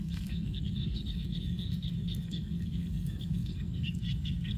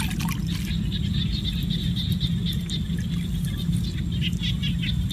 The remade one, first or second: first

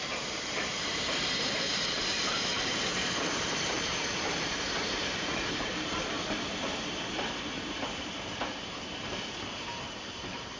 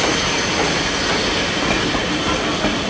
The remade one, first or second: first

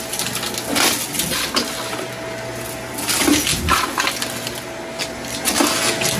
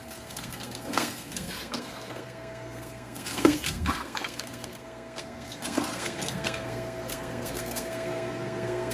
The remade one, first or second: second